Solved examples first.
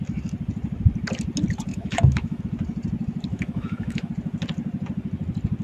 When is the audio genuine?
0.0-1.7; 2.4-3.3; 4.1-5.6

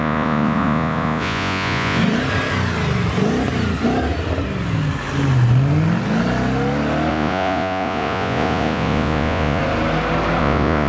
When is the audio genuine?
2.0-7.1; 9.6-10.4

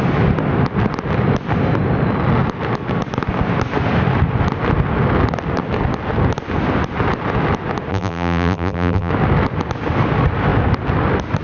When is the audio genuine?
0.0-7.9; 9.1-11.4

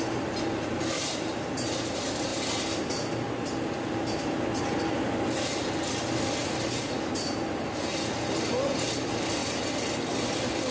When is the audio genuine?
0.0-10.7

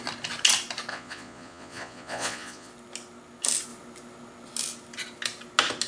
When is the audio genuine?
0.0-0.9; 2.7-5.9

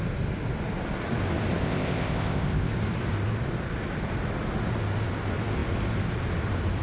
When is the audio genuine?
0.0-1.6; 2.7-6.8

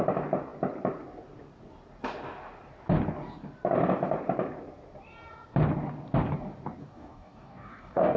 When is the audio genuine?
0.0-6.8

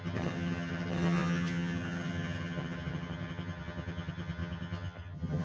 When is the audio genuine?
none